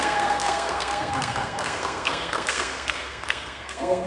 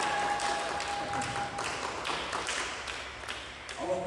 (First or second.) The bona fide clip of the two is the second